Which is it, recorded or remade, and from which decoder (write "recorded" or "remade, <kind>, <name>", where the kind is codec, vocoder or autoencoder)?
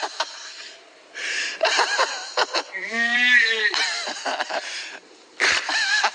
remade, vocoder, BigVGAN v2